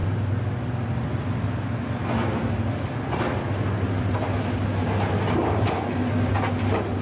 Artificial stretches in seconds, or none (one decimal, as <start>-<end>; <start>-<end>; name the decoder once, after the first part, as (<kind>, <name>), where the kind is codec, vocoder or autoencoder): none

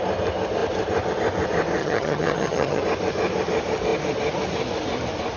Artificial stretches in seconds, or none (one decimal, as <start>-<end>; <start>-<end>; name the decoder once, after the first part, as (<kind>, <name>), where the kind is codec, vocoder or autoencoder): 1.8-2.8 (vocoder, HiFi-GAN)

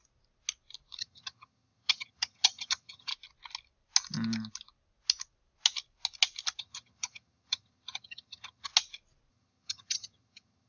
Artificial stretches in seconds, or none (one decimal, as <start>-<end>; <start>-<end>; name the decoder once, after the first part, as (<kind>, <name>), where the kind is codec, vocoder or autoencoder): 1.0-3.1 (vocoder, HiFi-GAN); 6.6-8.7; 9.3-10.7

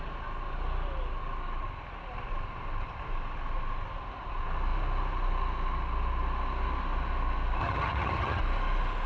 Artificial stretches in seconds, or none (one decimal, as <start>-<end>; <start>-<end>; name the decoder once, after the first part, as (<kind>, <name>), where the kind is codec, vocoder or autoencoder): 7.6-8.4 (vocoder, HiFi-GAN)

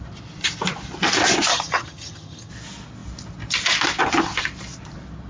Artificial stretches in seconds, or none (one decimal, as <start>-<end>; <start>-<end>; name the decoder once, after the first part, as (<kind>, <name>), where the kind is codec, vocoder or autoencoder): 1.5-2.5 (vocoder, HiFi-GAN)